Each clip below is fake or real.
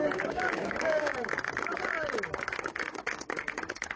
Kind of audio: fake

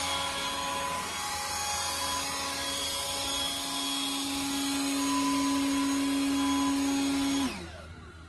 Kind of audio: real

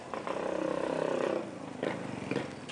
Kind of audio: real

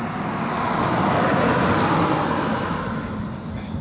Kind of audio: real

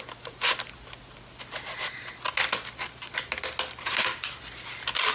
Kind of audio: real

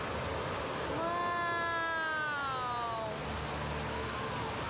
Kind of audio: real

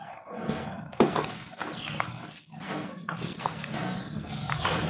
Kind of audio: fake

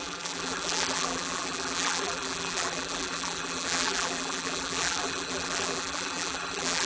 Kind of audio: fake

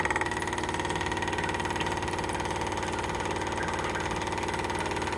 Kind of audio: real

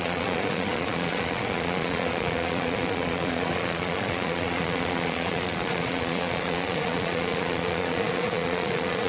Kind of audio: fake